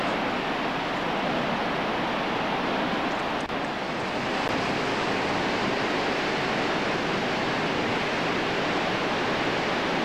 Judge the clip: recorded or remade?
recorded